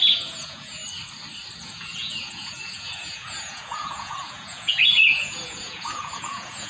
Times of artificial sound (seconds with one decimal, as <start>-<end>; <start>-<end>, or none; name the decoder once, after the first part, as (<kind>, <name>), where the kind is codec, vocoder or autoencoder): 0.0-0.8 (vocoder, Vocos); 1.6-6.7